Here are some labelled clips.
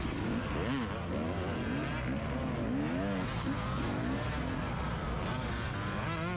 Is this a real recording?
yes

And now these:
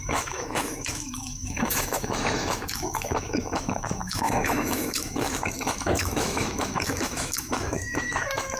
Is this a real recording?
no